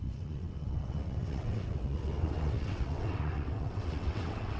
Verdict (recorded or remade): remade